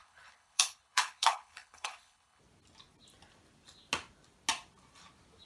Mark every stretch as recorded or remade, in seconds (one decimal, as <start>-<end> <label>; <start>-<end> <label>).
0.0-2.4 remade; 2.4-5.5 recorded